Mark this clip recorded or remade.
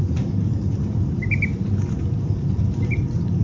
remade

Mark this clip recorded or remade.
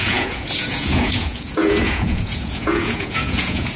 remade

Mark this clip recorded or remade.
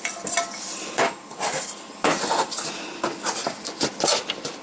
recorded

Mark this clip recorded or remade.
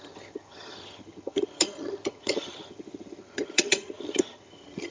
remade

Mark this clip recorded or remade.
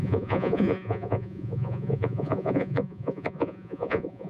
remade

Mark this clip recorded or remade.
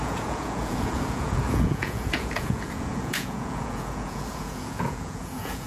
remade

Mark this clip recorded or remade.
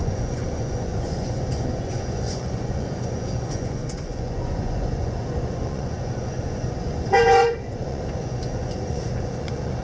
remade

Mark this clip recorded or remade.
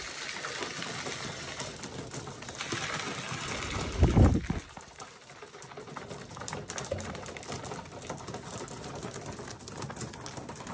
recorded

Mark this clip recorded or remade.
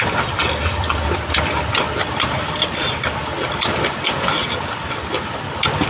recorded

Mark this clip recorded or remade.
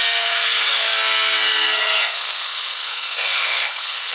remade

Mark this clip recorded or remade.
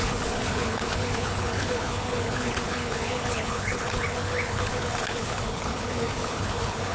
remade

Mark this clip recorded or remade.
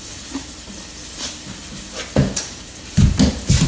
recorded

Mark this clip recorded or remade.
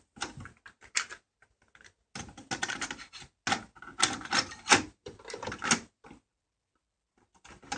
recorded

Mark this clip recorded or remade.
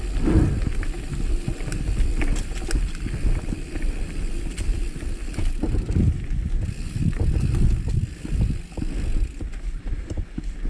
recorded